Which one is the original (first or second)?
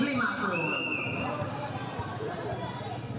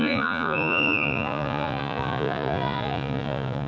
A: first